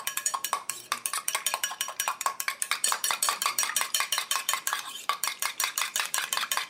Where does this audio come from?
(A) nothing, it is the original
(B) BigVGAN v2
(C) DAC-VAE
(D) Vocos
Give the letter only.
B